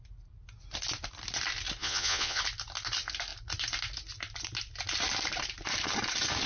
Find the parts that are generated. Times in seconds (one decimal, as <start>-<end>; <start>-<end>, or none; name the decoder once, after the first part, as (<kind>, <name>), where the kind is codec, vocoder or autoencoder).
1.8-2.4 (vocoder, Vocos)